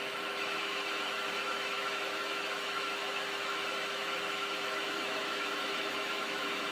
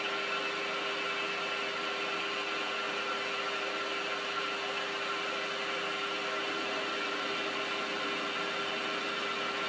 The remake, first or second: first